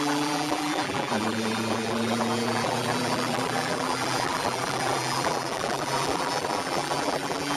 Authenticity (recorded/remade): remade